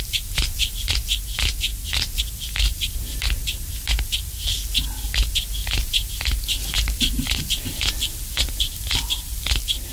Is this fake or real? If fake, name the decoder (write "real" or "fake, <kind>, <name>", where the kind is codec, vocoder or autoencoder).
real